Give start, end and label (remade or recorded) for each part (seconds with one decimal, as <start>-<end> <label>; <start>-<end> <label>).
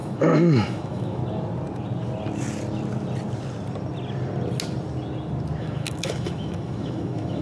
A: 0.0-1.2 remade; 1.2-5.6 recorded; 5.6-7.4 remade